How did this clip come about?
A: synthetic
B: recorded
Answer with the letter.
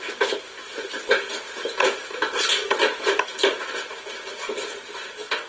B